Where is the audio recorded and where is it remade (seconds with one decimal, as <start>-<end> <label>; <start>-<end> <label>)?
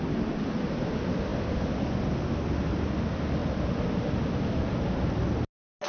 0.0-5.9 recorded